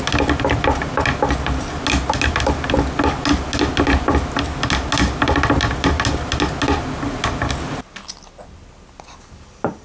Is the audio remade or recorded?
recorded